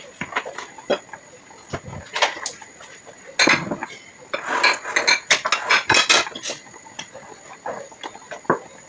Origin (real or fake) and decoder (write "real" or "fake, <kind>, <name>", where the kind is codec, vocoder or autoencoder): real